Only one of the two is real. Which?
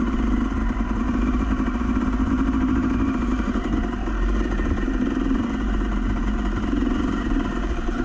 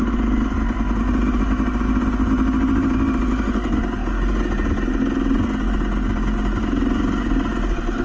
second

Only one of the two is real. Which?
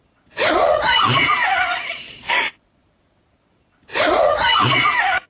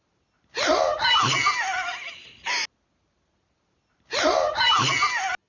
second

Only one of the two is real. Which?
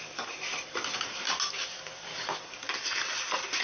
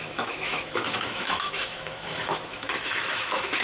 first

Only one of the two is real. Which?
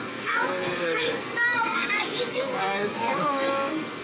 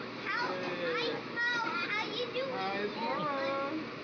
second